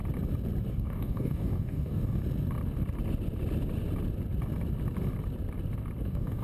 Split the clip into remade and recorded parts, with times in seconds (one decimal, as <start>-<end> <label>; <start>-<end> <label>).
0.0-0.7 recorded; 0.7-2.2 remade; 2.2-6.0 recorded; 6.0-6.4 remade

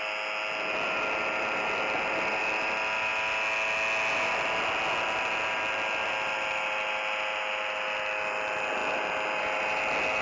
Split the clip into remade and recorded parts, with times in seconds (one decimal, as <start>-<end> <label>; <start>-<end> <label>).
0.0-10.2 recorded

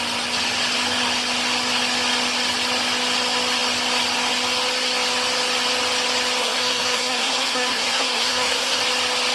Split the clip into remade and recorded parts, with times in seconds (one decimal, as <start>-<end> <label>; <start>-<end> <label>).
0.0-6.4 recorded; 6.4-8.8 remade; 8.8-9.3 recorded

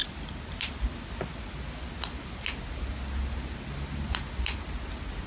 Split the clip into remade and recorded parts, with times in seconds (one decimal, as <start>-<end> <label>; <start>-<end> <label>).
0.0-5.3 recorded

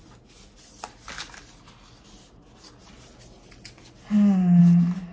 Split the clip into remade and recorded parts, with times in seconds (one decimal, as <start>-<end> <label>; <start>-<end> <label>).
0.0-5.1 recorded

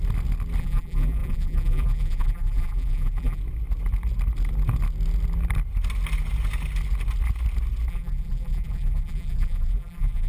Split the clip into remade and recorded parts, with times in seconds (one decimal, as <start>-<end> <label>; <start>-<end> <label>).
0.0-0.6 recorded; 0.6-3.4 remade; 3.4-7.9 recorded; 7.9-10.3 remade